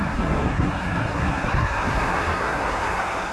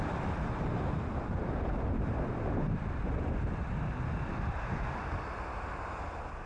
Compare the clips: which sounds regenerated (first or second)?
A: first